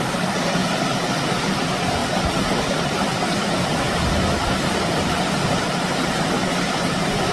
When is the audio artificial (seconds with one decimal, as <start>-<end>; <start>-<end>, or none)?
0.6-1.3